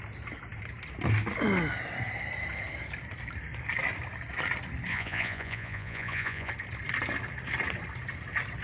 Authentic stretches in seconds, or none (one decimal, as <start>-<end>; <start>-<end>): 0.0-4.9; 6.5-8.6